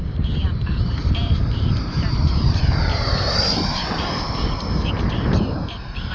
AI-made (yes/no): yes